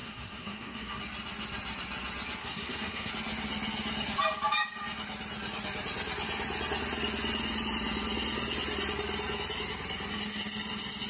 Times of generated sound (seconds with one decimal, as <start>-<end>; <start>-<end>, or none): 0.0-1.0; 2.4-3.1